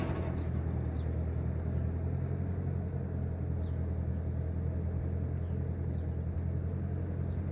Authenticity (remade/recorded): recorded